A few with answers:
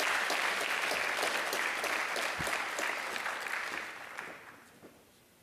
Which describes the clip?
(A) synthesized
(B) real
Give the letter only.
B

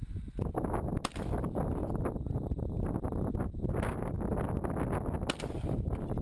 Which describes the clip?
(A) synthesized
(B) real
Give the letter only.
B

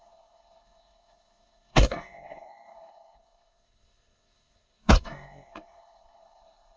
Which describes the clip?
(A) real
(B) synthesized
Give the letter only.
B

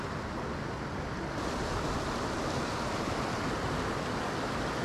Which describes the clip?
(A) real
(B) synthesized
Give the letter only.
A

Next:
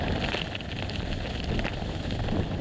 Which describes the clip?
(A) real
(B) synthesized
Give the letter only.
A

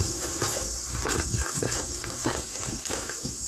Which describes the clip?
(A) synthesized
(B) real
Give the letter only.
A